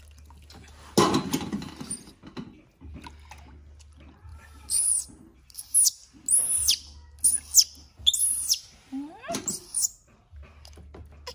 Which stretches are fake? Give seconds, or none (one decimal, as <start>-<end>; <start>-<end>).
4.3-5.4; 8.3-9.6